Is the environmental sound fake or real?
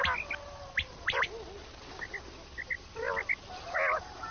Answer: real